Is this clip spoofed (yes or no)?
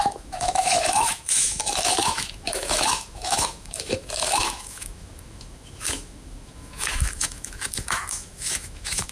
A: yes